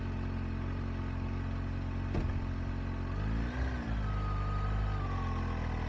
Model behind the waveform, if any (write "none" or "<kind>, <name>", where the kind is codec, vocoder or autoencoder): none